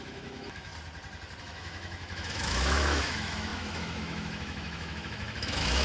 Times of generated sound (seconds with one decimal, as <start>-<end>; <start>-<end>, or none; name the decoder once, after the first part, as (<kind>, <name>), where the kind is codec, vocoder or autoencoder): 0.0-0.7 (autoencoder, DAC-VAE); 1.4-5.8